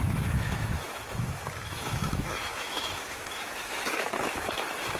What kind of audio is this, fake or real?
fake